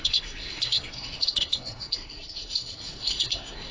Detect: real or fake fake